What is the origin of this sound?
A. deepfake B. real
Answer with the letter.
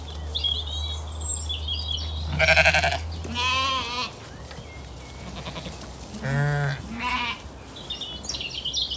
B